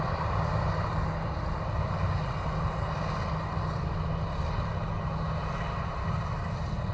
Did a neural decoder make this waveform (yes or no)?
no